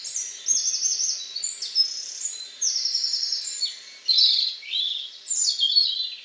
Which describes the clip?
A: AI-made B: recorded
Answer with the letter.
B